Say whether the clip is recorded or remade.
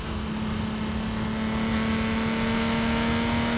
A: recorded